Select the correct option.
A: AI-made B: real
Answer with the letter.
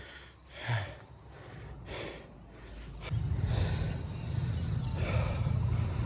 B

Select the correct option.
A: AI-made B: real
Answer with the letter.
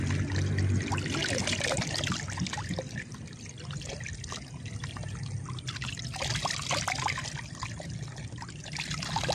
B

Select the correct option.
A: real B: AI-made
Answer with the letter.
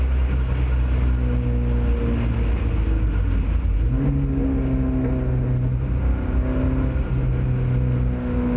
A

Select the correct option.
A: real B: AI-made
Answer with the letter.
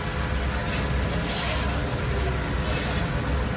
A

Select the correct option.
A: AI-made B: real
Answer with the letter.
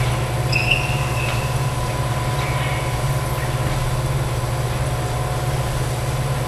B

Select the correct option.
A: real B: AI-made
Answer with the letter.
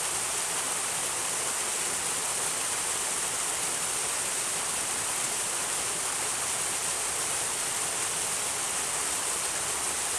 A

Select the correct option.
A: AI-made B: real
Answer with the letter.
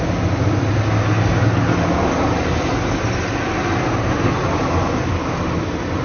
B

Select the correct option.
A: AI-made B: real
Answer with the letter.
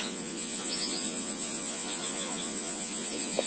A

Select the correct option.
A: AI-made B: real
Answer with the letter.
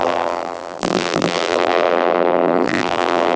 A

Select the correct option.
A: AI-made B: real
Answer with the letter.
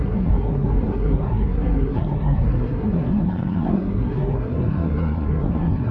A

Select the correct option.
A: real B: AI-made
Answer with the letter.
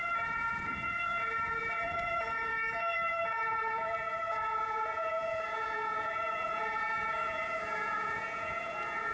B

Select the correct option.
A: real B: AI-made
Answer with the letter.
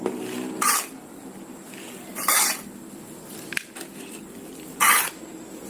A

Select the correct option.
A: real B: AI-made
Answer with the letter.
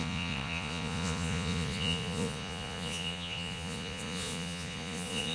B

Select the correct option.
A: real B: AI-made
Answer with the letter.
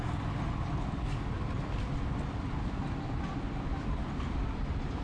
A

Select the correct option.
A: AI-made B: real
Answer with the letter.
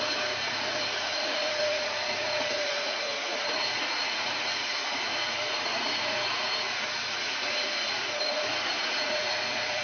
A